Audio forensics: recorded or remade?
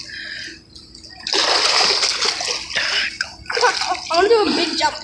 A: recorded